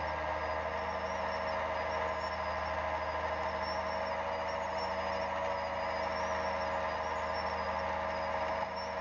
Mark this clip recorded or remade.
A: recorded